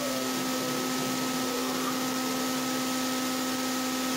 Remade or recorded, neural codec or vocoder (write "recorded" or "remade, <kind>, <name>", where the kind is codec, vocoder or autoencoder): recorded